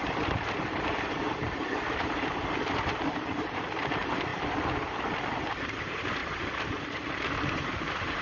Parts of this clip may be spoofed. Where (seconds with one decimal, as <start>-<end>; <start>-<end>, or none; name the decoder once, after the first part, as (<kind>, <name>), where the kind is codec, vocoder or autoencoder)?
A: 0.0-4.3 (vocoder, BigVGAN v2); 5.6-8.2